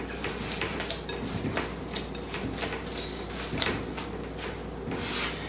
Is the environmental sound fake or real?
real